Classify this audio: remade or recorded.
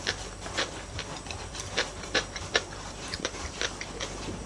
remade